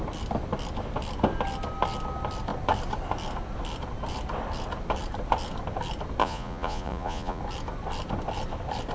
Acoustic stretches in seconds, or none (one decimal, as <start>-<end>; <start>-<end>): 0.0-6.2; 7.4-8.9